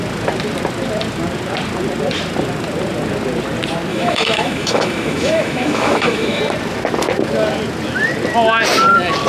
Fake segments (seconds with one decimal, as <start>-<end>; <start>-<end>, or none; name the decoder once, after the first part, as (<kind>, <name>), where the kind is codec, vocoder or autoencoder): 3.9-6.4 (autoencoder, DAC-VAE)